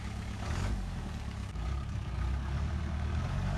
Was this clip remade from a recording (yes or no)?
yes